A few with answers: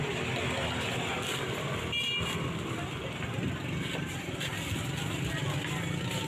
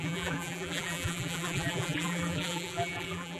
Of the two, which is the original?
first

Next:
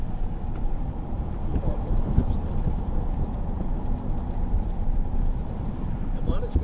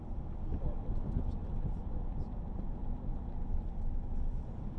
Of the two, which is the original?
second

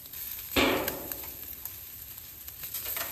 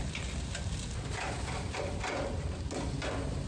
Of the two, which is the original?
second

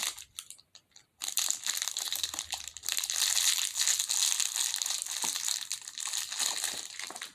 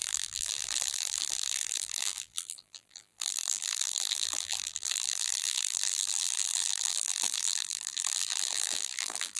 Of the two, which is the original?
first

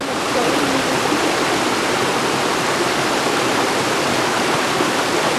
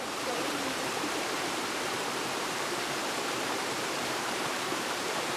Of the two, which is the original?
first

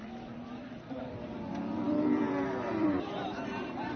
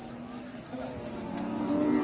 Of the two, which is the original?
second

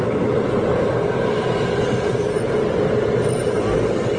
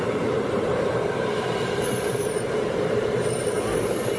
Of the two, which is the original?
first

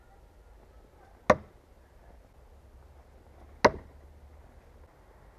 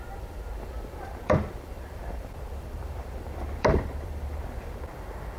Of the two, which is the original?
first